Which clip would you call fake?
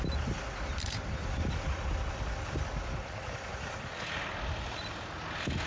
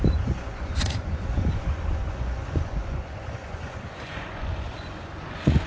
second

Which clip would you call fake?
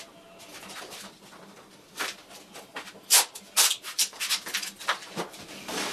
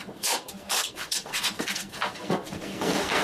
second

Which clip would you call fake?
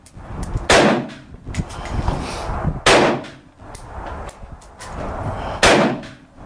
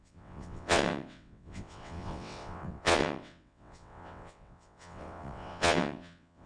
second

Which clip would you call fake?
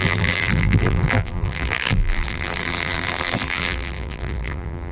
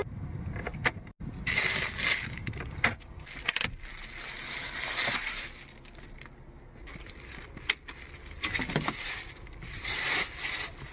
first